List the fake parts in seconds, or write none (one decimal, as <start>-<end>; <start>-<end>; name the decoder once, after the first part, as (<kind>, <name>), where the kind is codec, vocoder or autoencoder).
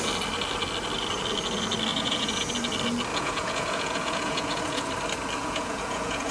1.9-2.5 (vocoder, Vocos); 3.1-4.9; 5.4-6.3